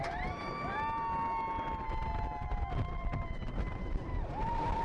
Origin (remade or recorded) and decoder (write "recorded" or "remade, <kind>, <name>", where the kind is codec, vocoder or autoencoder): recorded